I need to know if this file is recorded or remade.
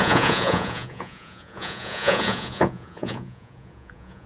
remade